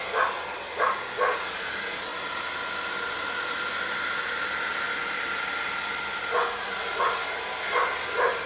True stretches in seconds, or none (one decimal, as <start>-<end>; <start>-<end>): 0.0-8.5